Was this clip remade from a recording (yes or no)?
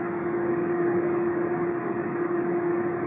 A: yes